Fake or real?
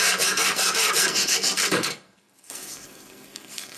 fake